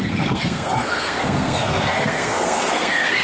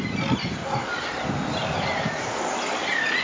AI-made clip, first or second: first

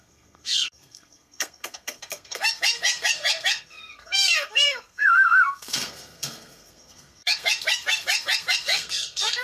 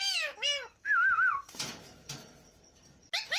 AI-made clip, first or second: first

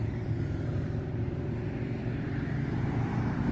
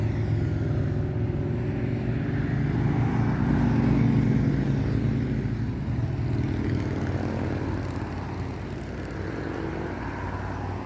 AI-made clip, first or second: first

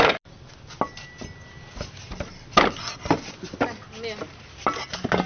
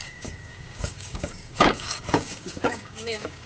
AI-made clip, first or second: second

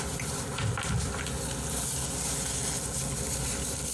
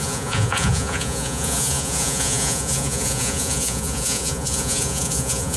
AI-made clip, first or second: second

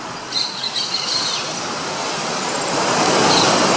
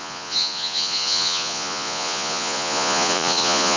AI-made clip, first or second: second